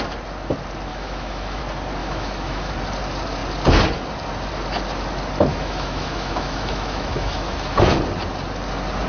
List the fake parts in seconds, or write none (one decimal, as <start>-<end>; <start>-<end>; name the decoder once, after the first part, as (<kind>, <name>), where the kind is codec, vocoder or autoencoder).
0.9-1.6 (autoencoder, DAC-VAE); 2.0-2.7; 5.5-7.8